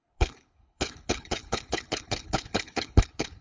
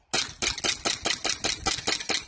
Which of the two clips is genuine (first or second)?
second